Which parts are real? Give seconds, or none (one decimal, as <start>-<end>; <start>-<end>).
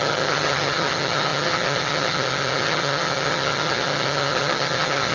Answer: none